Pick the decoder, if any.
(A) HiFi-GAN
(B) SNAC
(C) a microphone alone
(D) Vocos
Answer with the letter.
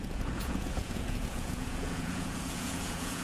D